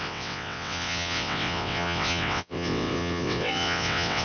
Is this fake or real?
fake